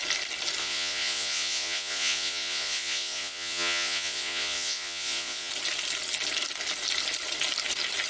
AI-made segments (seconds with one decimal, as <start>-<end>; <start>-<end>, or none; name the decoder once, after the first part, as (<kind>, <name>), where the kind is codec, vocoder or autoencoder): 0.6-5.5 (vocoder, Vocos)